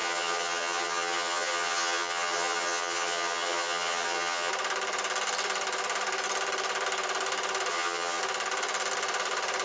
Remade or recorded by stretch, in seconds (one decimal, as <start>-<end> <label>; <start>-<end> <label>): 0.0-4.5 remade; 4.5-7.7 recorded; 7.7-8.2 remade; 8.2-9.6 recorded